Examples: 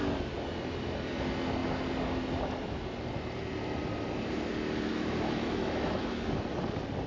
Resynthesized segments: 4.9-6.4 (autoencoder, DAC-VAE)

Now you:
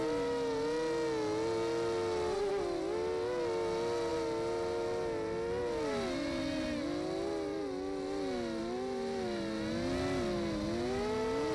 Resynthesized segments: none

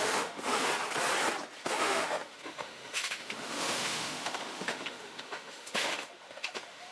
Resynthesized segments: 0.0-0.7 (autoencoder, DAC-VAE); 1.6-6.9

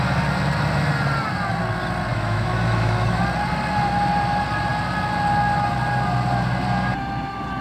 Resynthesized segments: 2.1-3.2 (autoencoder, DAC-VAE)

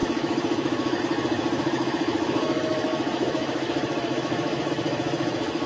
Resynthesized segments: 0.0-5.7 (autoencoder, DAC-VAE)

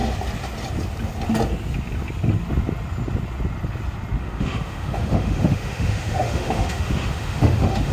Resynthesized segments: 4.2-7.9 (autoencoder, DAC-VAE)

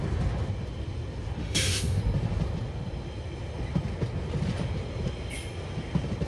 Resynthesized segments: 1.4-2.0 (autoencoder, DAC-VAE)

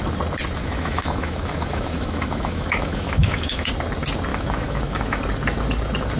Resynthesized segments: 0.6-3.7 (autoencoder, DAC-VAE); 4.3-5.2